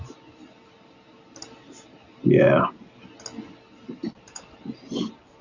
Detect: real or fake real